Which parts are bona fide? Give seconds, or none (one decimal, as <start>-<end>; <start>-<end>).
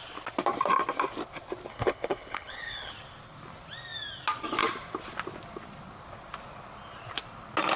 0.0-1.7; 2.9-7.8